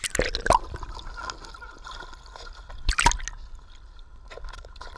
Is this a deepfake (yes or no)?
no